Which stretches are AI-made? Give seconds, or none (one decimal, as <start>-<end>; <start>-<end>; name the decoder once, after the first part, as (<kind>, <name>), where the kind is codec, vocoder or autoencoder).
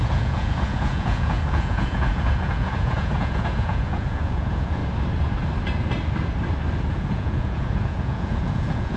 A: 0.0-4.8 (vocoder, Vocos); 6.9-9.0